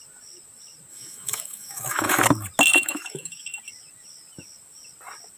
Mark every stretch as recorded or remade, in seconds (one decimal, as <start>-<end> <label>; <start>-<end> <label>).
0.0-0.9 recorded; 0.9-2.2 remade; 2.2-2.7 recorded; 2.7-3.6 remade; 3.6-5.4 recorded